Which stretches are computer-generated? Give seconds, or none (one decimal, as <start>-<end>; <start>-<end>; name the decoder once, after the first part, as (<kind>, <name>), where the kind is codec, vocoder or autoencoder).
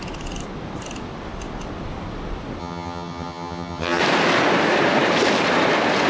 2.6-4.0 (vocoder, HiFi-GAN)